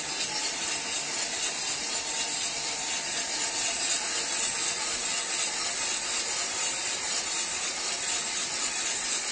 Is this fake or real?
real